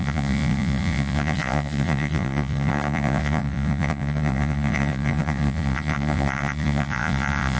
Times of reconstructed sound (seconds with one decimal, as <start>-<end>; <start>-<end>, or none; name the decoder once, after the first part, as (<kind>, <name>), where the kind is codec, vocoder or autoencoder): 0.0-7.6 (vocoder, Vocos)